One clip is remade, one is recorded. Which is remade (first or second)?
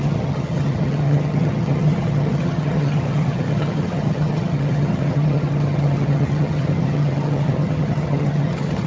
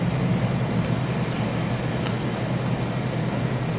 first